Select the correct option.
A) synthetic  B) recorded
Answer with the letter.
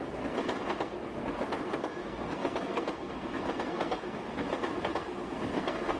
A